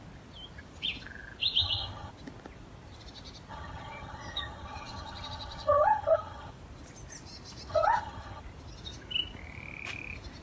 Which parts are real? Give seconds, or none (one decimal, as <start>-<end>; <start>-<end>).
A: 0.0-1.6; 2.1-3.5; 6.5-7.7; 8.4-10.4